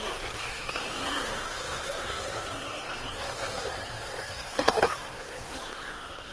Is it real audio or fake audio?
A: fake